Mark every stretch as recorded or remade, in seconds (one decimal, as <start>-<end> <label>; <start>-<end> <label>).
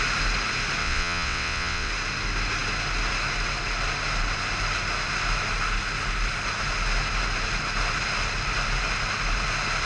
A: 0.0-0.8 recorded; 0.8-1.9 remade; 1.9-9.9 recorded